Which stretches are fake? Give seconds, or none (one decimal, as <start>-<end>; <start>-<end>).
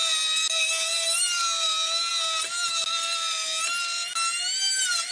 none